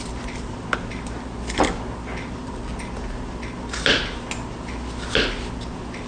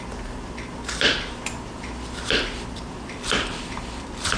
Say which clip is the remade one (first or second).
second